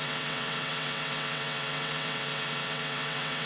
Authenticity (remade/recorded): remade